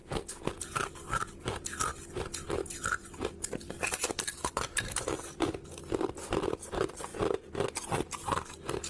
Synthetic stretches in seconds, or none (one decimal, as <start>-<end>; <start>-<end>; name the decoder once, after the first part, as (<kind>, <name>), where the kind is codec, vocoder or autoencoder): 0.0-0.5 (codec, SNAC)

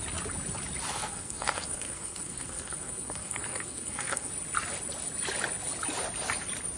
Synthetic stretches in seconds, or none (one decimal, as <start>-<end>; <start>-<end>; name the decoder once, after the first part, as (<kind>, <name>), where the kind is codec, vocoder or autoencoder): 0.9-4.3 (codec, SNAC)